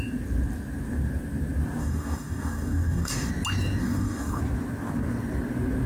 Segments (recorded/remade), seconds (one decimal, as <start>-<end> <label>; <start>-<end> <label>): 0.0-1.8 recorded; 1.8-3.3 remade; 3.3-3.8 recorded; 3.8-4.4 remade; 4.4-5.9 recorded